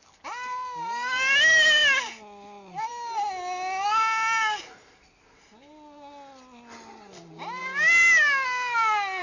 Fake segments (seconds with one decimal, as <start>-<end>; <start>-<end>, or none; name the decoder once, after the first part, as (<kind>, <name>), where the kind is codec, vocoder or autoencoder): none